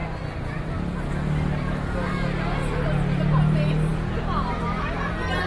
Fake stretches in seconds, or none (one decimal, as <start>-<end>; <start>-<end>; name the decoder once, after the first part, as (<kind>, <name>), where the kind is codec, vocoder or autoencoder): none